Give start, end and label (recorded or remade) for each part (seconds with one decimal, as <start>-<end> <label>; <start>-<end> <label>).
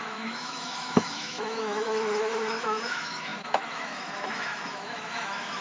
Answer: 0.0-5.6 remade